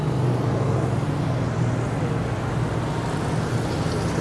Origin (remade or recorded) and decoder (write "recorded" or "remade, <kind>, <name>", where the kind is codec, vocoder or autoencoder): recorded